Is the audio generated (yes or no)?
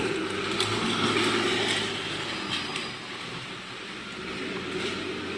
no